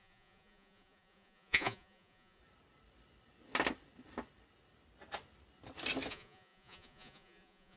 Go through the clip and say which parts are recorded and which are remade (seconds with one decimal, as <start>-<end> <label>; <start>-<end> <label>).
0.0-2.4 remade; 2.4-6.1 recorded; 6.1-7.8 remade